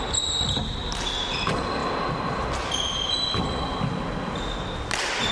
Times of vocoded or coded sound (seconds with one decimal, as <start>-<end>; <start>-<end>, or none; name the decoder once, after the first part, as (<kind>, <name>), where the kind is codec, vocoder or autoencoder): none